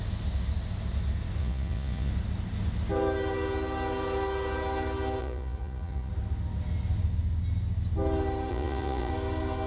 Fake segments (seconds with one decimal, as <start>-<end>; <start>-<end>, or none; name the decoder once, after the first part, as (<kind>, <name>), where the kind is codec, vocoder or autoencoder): 1.4-2.1 (vocoder, Vocos); 5.2-6.1; 8.5-9.1